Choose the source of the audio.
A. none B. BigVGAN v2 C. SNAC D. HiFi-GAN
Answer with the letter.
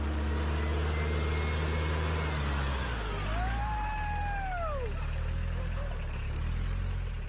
A